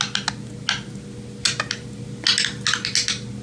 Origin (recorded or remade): recorded